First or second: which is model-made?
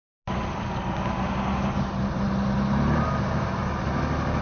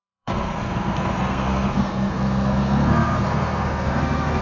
second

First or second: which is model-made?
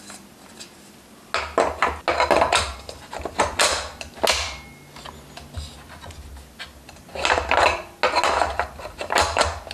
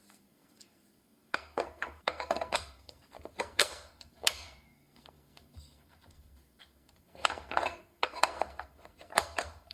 second